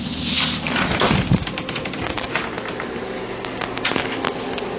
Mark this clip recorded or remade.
recorded